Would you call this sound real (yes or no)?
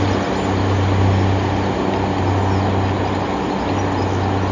yes